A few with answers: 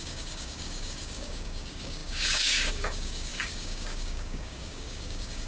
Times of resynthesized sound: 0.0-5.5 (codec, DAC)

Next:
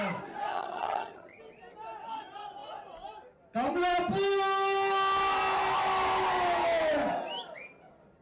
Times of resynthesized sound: 0.5-1.4 (vocoder, HiFi-GAN)

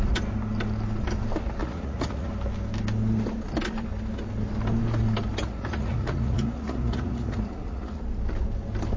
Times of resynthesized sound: 1.6-2.3 (vocoder, Vocos); 5.4-8.0